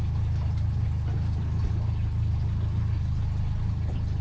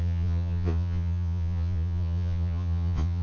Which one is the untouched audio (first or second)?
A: first